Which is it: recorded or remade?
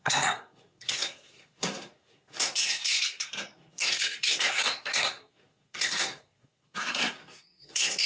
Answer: remade